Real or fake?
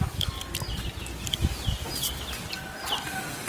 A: real